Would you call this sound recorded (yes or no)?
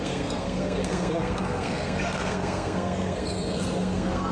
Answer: no